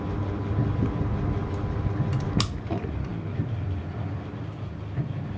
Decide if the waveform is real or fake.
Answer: real